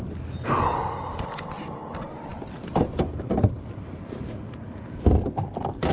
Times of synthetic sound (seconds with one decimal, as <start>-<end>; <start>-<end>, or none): none